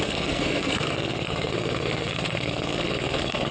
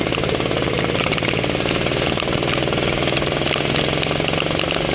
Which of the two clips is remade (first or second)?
first